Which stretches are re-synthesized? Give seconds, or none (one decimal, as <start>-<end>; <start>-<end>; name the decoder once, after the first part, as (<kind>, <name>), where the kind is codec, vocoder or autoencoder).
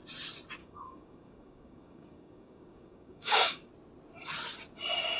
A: 0.6-3.7 (codec, DAC)